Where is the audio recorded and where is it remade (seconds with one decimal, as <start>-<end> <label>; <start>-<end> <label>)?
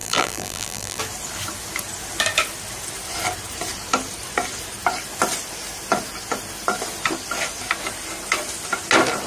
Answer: 0.0-1.0 remade; 1.0-9.3 recorded